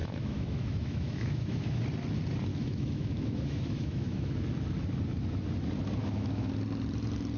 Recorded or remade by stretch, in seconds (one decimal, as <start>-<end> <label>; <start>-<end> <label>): 0.0-1.8 remade; 1.8-2.5 recorded; 2.5-4.3 remade; 4.3-6.0 recorded; 6.0-6.5 remade; 6.5-7.4 recorded